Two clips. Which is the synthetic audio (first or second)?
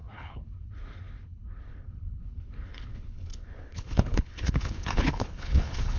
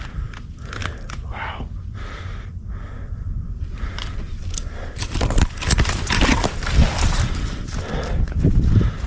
first